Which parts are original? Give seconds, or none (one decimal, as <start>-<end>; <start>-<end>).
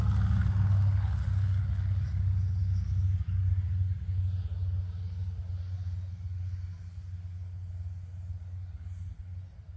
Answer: 0.0-9.8